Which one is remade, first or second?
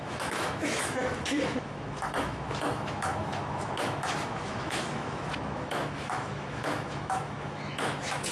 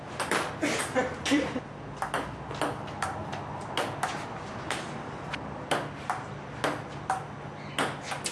first